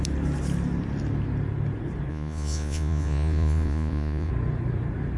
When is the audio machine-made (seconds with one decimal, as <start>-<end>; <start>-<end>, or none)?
2.1-4.3